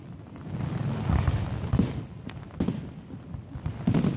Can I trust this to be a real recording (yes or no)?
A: yes